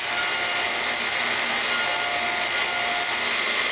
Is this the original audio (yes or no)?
yes